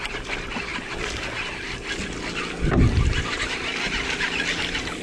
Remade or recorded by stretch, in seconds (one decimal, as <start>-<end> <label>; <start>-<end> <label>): 0.0-5.0 recorded